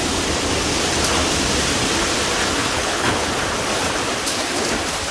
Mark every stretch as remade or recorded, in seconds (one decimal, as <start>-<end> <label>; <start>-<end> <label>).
0.0-2.6 recorded; 2.6-3.3 remade; 3.3-5.1 recorded